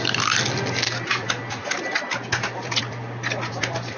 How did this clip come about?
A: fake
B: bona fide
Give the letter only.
B